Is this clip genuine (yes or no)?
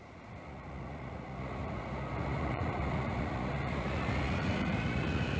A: no